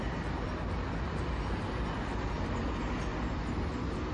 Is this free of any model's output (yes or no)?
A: yes